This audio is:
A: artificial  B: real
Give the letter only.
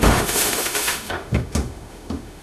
A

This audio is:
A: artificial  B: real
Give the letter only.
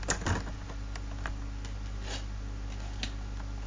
B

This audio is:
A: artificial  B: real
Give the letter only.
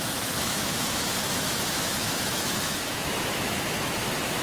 A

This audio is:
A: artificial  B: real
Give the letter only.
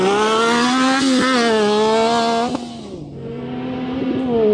B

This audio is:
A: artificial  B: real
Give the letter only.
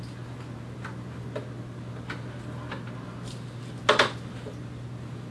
B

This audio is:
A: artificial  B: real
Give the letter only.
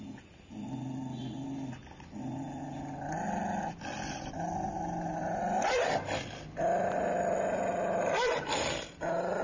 B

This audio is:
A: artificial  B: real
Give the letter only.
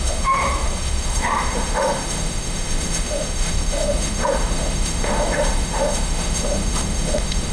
A